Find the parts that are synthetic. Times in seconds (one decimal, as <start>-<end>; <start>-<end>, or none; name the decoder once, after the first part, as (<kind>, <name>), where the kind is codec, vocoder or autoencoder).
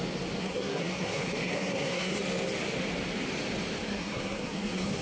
0.4-2.2 (codec, SNAC); 3.8-5.0